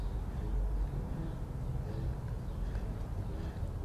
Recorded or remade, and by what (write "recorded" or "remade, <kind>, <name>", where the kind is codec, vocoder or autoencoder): recorded